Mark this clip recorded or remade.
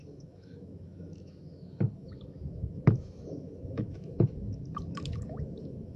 remade